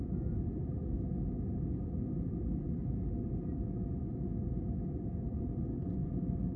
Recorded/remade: recorded